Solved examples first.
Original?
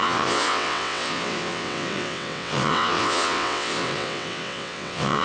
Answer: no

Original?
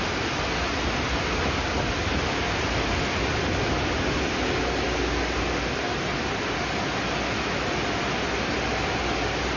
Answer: yes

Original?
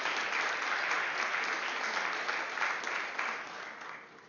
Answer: yes